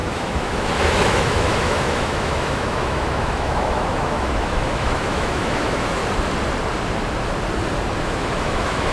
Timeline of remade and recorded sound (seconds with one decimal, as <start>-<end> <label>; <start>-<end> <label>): 0.0-6.0 remade; 6.0-8.0 recorded; 8.0-8.9 remade